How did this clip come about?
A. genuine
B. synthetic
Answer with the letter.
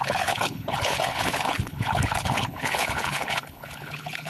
B